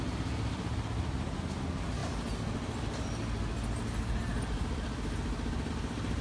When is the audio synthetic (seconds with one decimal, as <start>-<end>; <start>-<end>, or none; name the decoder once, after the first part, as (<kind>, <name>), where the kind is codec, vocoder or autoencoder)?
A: none